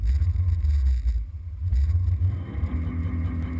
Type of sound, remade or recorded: recorded